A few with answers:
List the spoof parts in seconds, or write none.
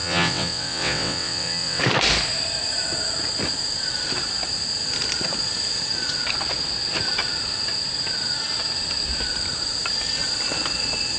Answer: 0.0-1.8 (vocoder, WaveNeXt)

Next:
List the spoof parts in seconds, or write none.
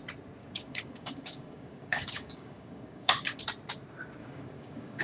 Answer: 0.4-3.4 (codec, DAC); 4.2-5.0